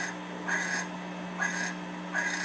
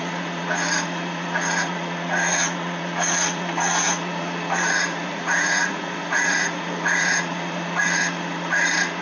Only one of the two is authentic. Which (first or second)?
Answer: first